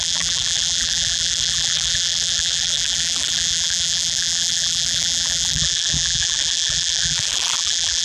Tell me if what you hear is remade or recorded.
remade